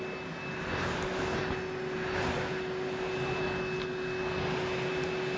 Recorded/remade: recorded